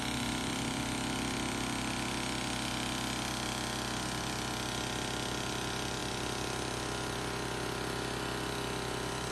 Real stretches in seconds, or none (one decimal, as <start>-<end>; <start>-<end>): 0.0-9.3